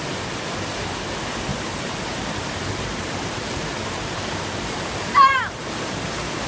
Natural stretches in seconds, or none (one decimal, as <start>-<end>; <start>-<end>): 0.0-1.5; 5.4-6.5